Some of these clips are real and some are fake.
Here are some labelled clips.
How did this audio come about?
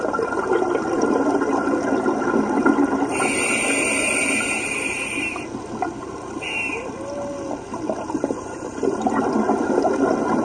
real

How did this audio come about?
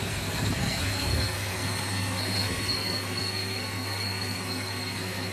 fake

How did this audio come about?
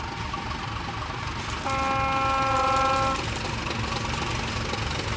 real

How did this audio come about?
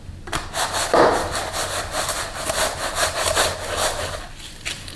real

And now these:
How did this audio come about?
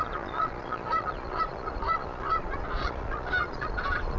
fake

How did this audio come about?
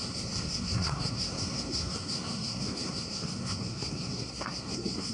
fake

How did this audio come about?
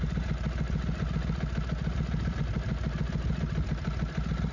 real